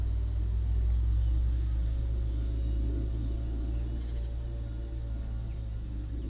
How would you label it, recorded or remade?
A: recorded